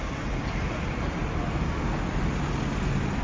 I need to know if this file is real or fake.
real